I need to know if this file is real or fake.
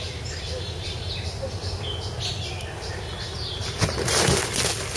real